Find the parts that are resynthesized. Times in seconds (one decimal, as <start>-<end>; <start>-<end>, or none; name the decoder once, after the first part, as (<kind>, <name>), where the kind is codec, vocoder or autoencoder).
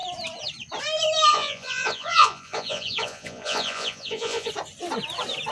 1.3-4.5 (vocoder, Vocos)